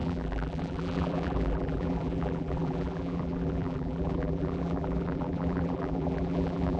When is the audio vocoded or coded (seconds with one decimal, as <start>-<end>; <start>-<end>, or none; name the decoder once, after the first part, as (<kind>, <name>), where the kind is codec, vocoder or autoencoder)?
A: 0.0-6.8 (vocoder, BigVGAN v2)